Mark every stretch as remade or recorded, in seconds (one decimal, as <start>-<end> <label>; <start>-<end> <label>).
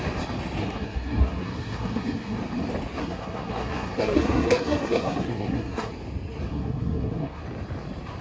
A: 0.0-0.6 recorded; 0.6-2.4 remade; 2.4-3.0 recorded; 3.0-5.9 remade; 5.9-6.5 recorded; 6.5-7.4 remade; 7.4-8.2 recorded